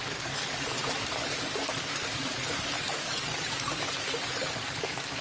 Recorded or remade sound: remade